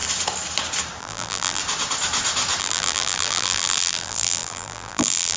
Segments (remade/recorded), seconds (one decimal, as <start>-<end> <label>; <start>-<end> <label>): 0.0-1.0 recorded; 1.0-1.6 remade; 1.6-2.6 recorded; 2.6-5.4 remade